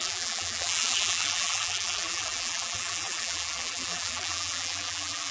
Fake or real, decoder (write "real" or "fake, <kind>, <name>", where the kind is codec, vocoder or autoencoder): fake, vocoder, BigVGAN v2